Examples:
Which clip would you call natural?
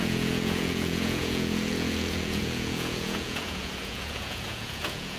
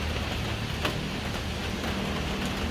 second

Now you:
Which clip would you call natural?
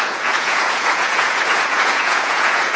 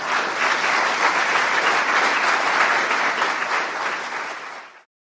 second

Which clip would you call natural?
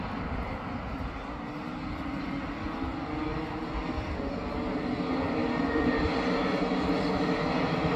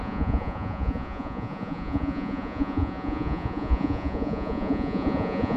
first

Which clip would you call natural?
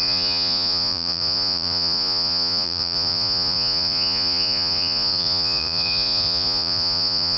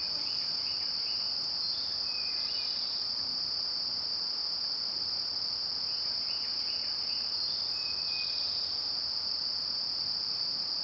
second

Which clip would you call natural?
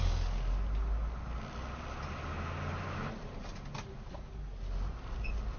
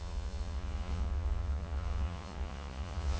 first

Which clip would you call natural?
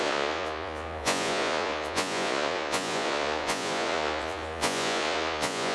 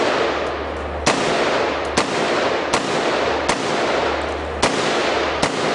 second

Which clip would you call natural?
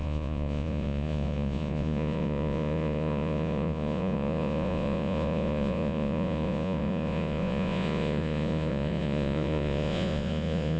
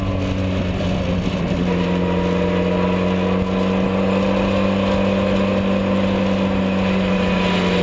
second